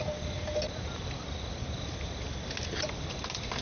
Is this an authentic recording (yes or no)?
yes